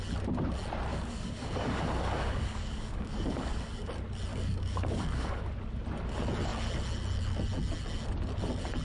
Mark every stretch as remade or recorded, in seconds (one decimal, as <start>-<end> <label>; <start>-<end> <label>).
0.0-0.9 recorded; 0.9-3.9 remade; 3.9-4.3 recorded; 4.3-5.5 remade; 5.5-8.8 recorded